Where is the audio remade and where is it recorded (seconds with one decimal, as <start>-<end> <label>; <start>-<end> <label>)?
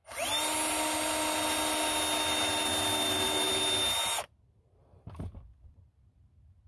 0.0-6.7 recorded